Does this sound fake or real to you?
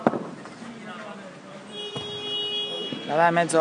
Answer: real